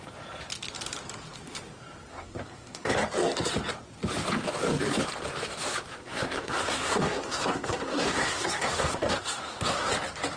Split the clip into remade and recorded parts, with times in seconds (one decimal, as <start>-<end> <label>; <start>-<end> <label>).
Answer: 0.0-2.1 recorded; 2.1-2.9 remade; 2.9-5.9 recorded; 5.9-9.9 remade; 9.9-10.4 recorded